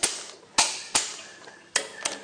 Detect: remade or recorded recorded